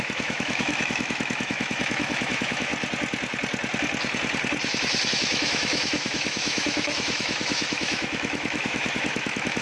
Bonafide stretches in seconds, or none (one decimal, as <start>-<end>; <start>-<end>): 2.7-5.1